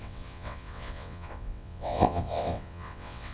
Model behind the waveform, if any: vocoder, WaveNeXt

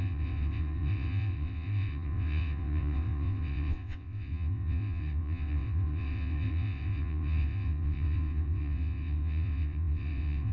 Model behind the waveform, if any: vocoder, WaveNeXt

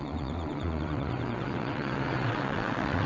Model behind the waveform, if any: vocoder, WaveNeXt